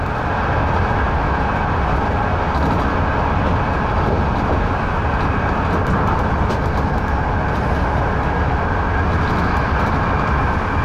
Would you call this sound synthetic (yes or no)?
no